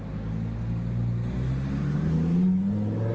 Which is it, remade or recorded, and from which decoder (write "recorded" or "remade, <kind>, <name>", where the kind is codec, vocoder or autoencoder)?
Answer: recorded